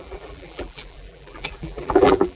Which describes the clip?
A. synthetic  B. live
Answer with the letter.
A